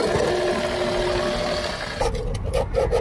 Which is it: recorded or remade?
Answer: recorded